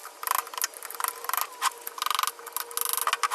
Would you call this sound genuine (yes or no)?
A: yes